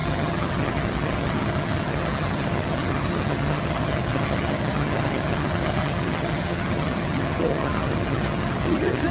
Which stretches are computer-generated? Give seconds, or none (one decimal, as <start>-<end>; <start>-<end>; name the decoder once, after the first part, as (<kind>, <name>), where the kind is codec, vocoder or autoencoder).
0.0-9.1 (vocoder, HiFi-GAN)